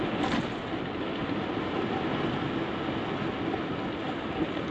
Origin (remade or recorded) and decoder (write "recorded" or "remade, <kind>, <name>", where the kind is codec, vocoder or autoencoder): recorded